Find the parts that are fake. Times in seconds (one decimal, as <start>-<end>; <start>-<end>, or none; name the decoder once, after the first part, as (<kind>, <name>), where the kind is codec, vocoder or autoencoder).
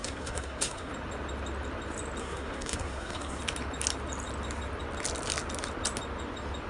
0.0-0.9 (codec, SNAC); 2.2-3.4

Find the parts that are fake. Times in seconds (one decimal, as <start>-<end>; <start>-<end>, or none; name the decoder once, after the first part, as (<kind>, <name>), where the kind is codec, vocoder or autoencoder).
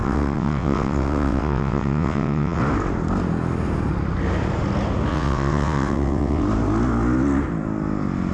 0.0-2.6 (vocoder, WaveNeXt); 5.1-6.4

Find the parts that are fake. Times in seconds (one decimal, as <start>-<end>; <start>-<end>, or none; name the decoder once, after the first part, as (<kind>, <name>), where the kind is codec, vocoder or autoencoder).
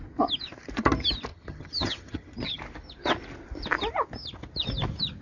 1.3-2.6 (vocoder, HiFi-GAN)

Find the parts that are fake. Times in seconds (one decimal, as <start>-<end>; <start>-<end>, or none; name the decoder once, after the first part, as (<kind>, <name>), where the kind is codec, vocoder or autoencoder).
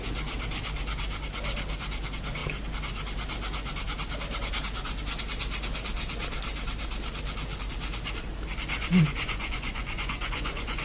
8.8-10.8 (vocoder, Vocos)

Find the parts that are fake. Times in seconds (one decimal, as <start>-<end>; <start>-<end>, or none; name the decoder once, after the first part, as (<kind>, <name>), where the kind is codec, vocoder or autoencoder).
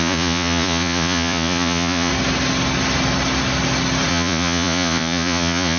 0.0-2.1 (vocoder, Vocos); 4.1-5.8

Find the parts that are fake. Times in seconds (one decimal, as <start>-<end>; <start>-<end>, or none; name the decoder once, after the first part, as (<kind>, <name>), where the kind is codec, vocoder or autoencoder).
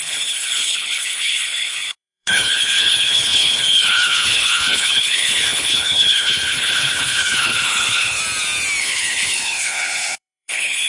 0.0-8.2 (codec, HILCodec); 8.8-10.9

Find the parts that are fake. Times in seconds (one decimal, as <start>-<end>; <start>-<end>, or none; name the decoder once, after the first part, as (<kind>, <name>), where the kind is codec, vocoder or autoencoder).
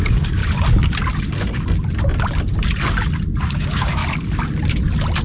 0.0-0.4 (codec, DAC); 3.5-4.0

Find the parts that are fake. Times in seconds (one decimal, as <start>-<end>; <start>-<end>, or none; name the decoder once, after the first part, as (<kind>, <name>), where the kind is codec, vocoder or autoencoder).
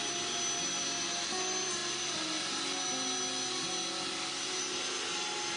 none